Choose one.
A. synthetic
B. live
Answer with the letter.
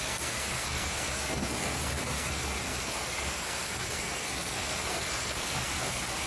A